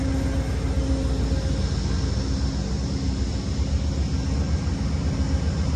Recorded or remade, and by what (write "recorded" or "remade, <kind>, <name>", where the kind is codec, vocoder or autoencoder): recorded